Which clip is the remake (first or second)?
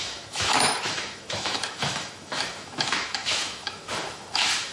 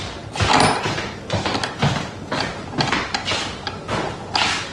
first